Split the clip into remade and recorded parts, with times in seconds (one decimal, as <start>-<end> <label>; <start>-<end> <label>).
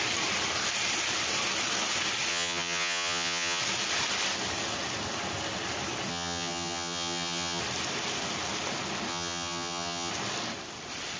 0.0-2.3 recorded; 2.3-3.6 remade; 3.6-6.1 recorded; 6.1-7.6 remade; 7.6-9.1 recorded; 9.1-10.1 remade; 10.1-11.2 recorded